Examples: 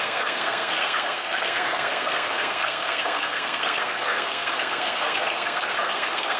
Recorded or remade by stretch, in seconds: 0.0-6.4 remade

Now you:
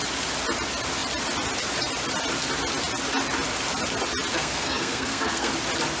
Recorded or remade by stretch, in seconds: 0.0-4.3 recorded; 4.3-5.5 remade; 5.5-6.0 recorded

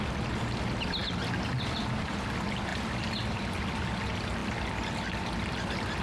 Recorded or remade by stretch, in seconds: 0.0-6.0 recorded

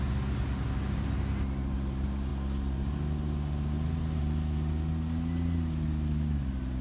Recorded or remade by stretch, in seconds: 0.0-6.8 recorded

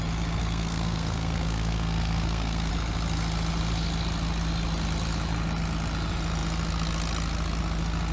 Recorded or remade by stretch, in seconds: 0.0-0.4 recorded; 0.4-2.7 remade; 2.7-8.1 recorded

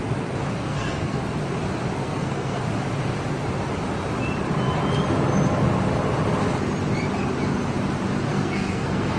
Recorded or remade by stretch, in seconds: 0.0-0.6 recorded; 0.6-1.2 remade; 1.2-2.0 recorded; 2.0-2.6 remade; 2.6-8.3 recorded; 8.3-9.2 remade